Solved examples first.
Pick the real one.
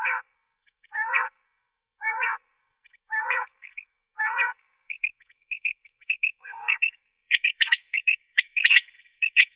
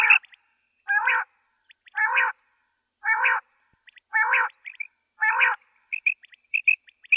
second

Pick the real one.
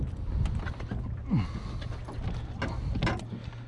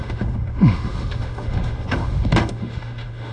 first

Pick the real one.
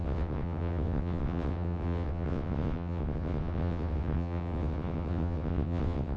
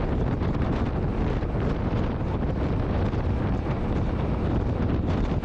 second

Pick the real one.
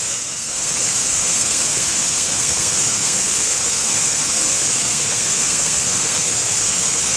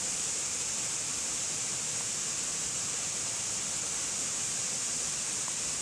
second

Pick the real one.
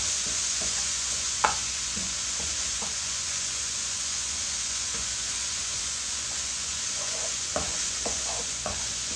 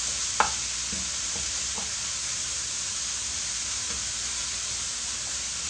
second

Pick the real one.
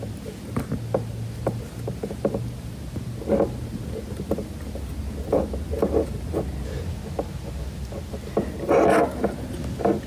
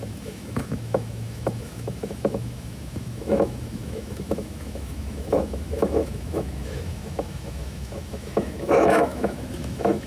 first